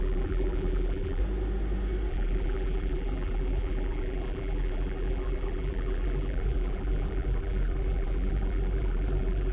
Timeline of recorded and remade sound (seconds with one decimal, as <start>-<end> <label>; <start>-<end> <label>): 0.0-1.2 remade; 1.2-2.1 recorded; 2.1-9.5 remade